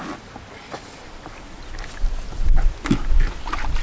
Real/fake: real